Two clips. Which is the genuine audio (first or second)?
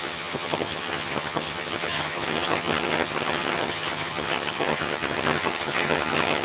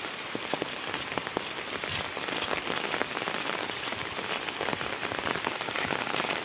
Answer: second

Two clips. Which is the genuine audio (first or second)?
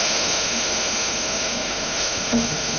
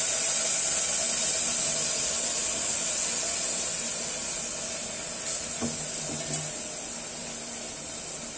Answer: second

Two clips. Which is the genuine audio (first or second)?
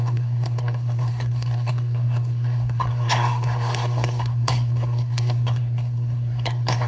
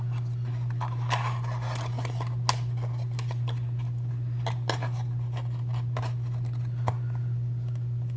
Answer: second